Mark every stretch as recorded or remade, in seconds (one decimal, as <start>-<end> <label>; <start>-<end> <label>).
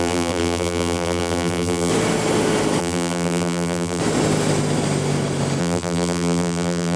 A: 0.0-1.9 remade; 1.9-2.8 recorded; 2.8-4.0 remade; 4.0-5.6 recorded; 5.6-7.0 remade